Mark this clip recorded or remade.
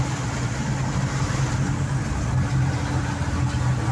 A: recorded